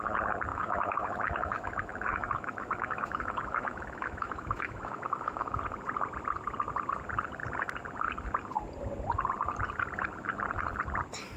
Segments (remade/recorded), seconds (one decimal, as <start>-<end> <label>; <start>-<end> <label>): 0.0-0.5 recorded; 0.5-5.6 remade; 5.6-11.4 recorded

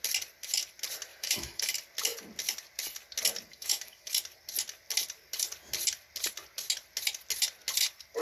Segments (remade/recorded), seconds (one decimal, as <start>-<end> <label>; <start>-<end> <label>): 0.0-1.1 recorded; 1.1-1.7 remade; 1.7-3.5 recorded; 3.5-4.1 remade; 4.1-8.2 recorded

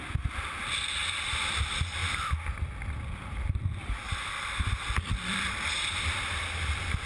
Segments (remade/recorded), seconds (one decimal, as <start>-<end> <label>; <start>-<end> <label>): 0.0-7.1 recorded

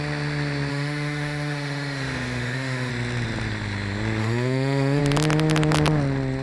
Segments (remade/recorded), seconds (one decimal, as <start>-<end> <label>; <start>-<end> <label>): 0.0-0.7 recorded; 0.7-2.9 remade; 2.9-4.2 recorded; 4.2-5.0 remade; 5.0-6.4 recorded